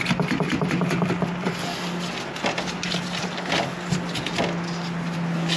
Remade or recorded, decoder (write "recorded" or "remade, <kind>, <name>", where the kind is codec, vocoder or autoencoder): recorded